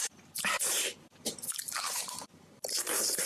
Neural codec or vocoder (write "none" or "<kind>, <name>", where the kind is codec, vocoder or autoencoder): vocoder, BigVGAN v2